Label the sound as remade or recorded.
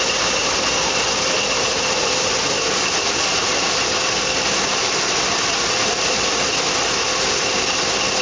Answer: recorded